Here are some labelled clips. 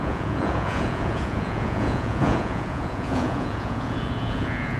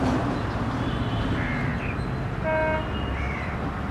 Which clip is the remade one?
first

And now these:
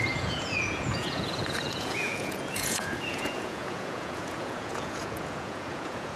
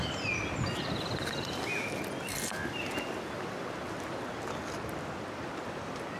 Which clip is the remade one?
first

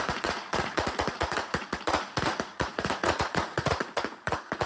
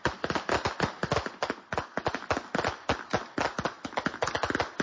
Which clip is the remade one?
first